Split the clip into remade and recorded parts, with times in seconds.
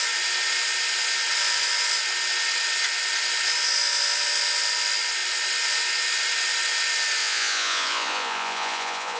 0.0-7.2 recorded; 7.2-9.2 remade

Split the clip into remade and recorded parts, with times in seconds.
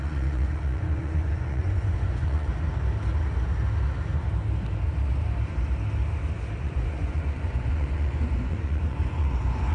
0.0-2.5 remade; 2.5-6.6 recorded; 6.6-9.7 remade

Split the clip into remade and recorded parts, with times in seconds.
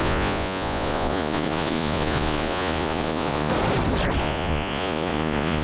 0.0-3.5 remade; 3.5-4.2 recorded; 4.2-5.6 remade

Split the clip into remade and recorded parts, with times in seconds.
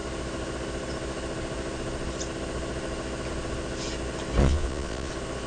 0.0-4.4 recorded; 4.4-5.1 remade; 5.1-5.5 recorded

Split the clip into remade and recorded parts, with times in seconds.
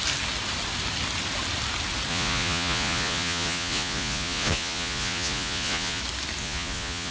0.0-2.1 recorded; 2.1-6.0 remade; 6.0-6.4 recorded; 6.4-7.1 remade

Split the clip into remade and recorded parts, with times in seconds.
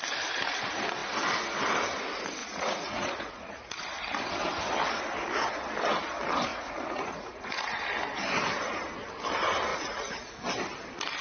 0.0-2.4 recorded; 2.4-3.8 remade; 3.8-6.5 recorded; 6.5-7.8 remade; 7.8-9.7 recorded; 9.7-10.4 remade; 10.4-11.2 recorded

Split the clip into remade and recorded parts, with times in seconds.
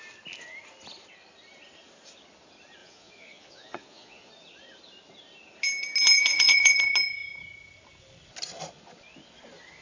0.0-2.8 recorded; 2.8-4.3 remade; 4.3-6.3 recorded; 6.3-6.8 remade; 6.8-9.8 recorded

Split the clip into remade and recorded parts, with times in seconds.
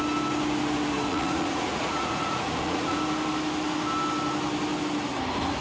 0.0-1.1 recorded; 1.1-3.0 remade; 3.0-5.6 recorded